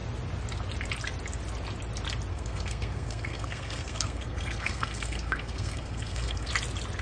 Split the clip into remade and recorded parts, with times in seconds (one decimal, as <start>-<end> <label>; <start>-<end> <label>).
0.0-2.3 recorded; 2.3-6.5 remade; 6.5-7.0 recorded